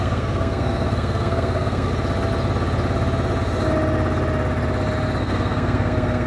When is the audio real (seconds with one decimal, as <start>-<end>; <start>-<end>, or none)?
1.9-5.2